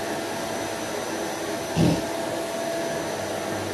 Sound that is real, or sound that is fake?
real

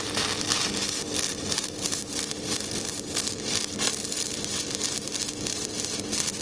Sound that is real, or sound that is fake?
real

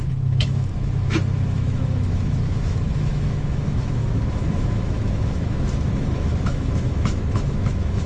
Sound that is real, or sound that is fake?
fake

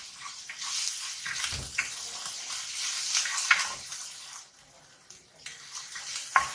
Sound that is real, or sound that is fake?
real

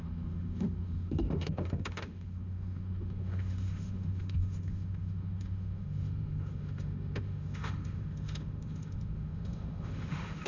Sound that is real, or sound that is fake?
fake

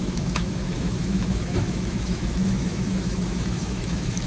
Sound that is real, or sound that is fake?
fake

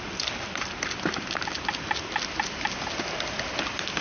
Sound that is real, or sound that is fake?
real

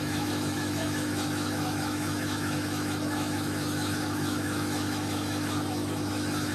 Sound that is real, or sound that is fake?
fake